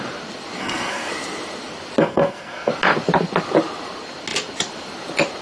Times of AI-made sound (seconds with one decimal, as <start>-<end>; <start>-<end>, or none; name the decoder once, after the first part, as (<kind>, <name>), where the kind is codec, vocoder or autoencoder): 0.6-1.1 (codec, SNAC); 2.0-2.7